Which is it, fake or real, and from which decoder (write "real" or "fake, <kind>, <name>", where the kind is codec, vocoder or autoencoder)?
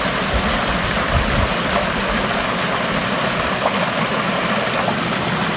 real